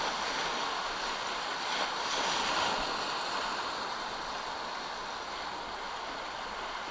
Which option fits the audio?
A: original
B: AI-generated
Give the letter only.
A